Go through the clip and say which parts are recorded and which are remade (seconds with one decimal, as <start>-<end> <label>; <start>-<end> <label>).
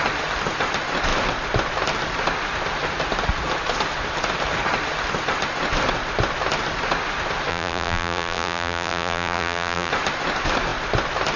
0.0-7.5 recorded; 7.5-9.9 remade; 9.9-11.4 recorded